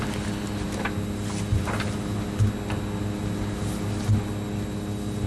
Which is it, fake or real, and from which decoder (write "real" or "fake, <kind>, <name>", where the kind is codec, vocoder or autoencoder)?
real